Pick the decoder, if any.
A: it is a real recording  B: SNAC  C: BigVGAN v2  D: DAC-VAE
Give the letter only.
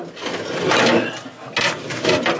A